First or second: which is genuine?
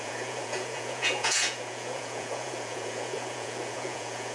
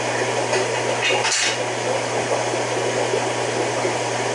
second